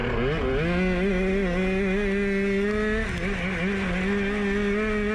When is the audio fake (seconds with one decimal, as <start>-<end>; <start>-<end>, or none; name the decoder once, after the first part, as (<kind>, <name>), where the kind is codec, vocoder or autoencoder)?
none